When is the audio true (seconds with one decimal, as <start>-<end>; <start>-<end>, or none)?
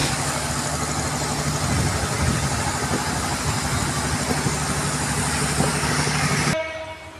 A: 0.5-5.7; 6.3-7.2